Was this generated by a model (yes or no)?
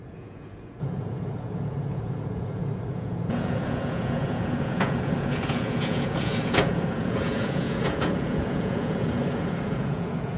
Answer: yes